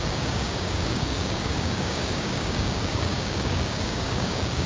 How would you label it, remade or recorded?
remade